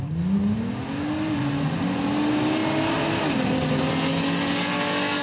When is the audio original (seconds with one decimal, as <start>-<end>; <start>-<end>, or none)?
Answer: 0.0-5.2